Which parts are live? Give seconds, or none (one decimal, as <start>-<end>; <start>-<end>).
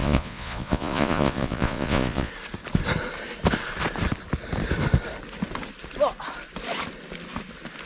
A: 2.3-7.9